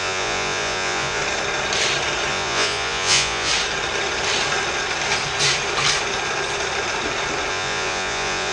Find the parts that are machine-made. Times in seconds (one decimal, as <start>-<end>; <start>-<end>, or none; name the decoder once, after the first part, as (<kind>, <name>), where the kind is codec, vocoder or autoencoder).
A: 0.0-1.2 (vocoder, Vocos); 2.3-3.5; 7.5-8.5